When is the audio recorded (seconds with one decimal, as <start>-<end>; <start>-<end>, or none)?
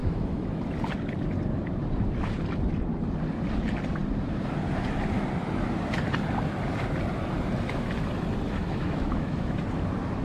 0.6-8.6; 9.6-10.2